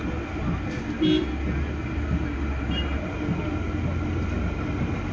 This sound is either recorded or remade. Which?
recorded